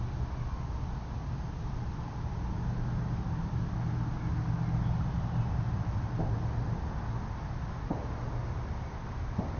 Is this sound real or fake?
real